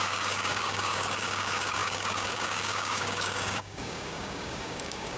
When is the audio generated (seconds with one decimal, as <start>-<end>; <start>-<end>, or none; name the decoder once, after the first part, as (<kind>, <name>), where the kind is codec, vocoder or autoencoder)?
0.0-5.2 (codec, DAC)